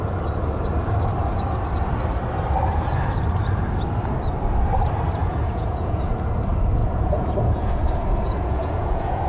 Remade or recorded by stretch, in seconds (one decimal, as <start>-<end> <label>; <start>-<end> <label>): 0.0-5.2 recorded; 5.2-6.1 remade; 6.1-6.8 recorded; 6.8-9.3 remade